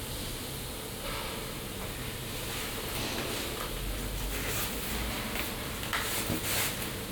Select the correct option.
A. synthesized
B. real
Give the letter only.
B